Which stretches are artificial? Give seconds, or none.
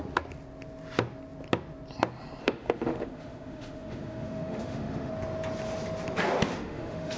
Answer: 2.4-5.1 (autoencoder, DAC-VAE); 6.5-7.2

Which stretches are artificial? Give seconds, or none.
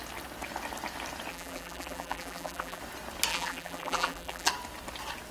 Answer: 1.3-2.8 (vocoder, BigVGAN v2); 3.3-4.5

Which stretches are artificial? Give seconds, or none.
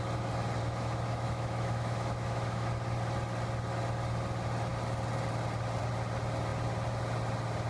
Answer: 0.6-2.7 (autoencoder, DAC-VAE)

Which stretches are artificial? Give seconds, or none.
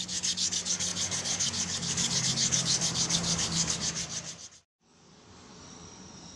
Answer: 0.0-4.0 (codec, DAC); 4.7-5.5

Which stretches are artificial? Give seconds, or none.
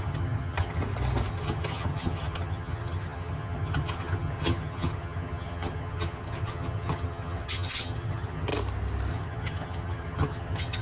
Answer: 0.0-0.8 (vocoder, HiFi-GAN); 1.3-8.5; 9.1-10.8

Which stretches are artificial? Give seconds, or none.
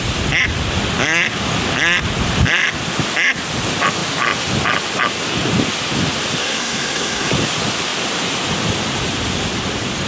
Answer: 6.4-7.3 (codec, SNAC)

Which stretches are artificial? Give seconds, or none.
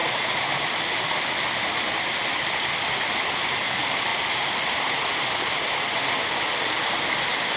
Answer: none